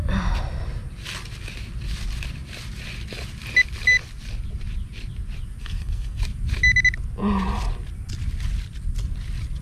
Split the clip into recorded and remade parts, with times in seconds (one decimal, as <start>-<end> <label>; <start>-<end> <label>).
0.0-5.6 recorded; 5.6-6.2 remade; 6.2-9.6 recorded